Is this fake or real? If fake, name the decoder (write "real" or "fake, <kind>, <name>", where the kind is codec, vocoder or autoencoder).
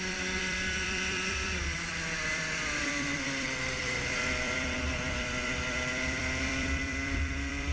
fake, vocoder, BigVGAN v2